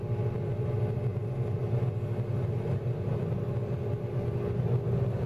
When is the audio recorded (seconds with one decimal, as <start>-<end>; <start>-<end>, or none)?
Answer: 0.0-5.3